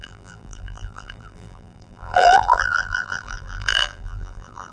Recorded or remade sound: remade